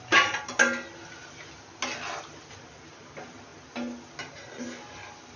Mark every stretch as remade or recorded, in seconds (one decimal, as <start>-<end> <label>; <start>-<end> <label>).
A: 0.0-5.4 recorded